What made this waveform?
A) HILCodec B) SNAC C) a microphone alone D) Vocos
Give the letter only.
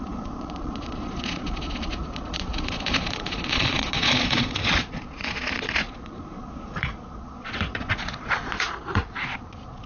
D